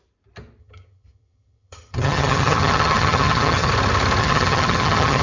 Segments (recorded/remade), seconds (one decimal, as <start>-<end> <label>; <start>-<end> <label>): 0.0-0.6 recorded; 0.6-3.7 remade; 3.7-4.2 recorded; 4.2-5.2 remade